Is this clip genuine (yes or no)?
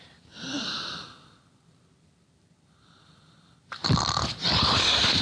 yes